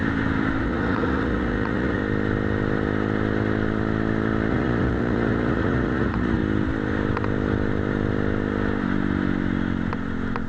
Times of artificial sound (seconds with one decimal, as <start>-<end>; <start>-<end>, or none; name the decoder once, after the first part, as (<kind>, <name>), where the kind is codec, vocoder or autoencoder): 0.6-2.0 (vocoder, Vocos); 4.5-6.4

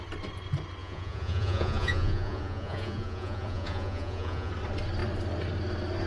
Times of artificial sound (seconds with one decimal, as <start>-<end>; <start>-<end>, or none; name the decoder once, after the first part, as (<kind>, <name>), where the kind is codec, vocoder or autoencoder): 0.8-4.5 (vocoder, Vocos)

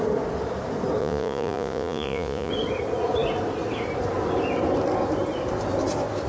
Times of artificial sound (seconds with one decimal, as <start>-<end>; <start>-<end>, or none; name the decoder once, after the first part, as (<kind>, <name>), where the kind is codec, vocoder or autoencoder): 1.0-2.5 (vocoder, Vocos)

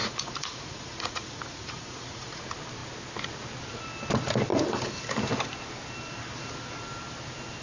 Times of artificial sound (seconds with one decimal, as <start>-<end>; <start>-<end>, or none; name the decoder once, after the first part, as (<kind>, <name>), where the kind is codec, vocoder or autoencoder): 0.0-2.4 (vocoder, Vocos)

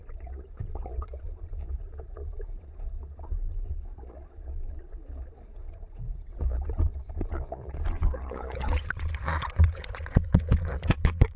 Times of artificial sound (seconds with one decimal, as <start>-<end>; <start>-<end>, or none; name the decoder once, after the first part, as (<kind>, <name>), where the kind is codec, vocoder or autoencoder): 0.0-11.4 (vocoder, Vocos)

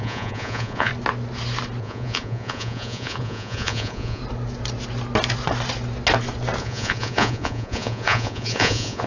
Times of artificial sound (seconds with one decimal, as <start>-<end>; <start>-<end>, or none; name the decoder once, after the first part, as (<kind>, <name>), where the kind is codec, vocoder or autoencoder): 0.0-0.9 (vocoder, Vocos); 1.8-4.2; 6.6-9.1

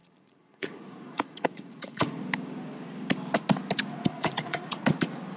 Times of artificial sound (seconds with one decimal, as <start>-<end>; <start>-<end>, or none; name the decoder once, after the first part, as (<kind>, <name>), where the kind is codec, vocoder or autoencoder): 0.0-2.2 (vocoder, Vocos); 4.1-4.8